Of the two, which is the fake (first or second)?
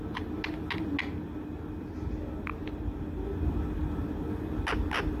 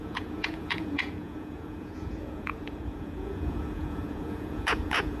second